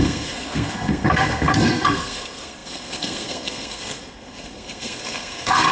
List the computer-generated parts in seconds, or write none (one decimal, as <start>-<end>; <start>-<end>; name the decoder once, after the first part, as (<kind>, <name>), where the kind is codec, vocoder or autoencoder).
0.0-5.7 (codec, SNAC)